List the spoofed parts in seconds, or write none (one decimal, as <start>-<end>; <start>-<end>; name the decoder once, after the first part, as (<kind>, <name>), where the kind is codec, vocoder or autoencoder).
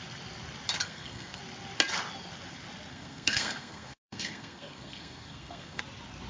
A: 0.8-1.4 (codec, SNAC); 2.9-5.8